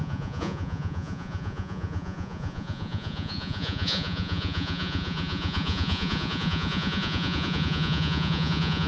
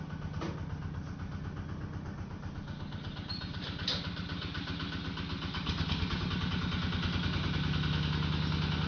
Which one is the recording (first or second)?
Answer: second